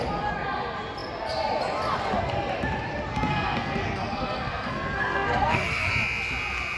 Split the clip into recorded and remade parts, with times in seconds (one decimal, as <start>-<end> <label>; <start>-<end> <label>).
0.0-3.1 recorded; 3.1-5.9 remade; 5.9-6.8 recorded